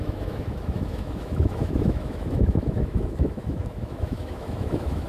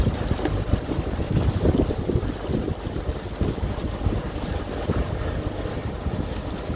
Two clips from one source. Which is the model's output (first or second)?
first